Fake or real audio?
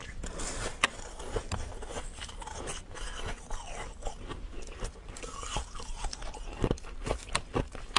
real